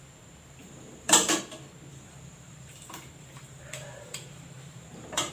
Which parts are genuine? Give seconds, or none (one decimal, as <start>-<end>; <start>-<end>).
0.0-0.6; 1.4-1.9